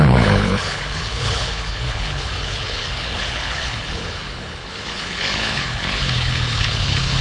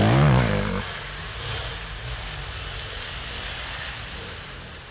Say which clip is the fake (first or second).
first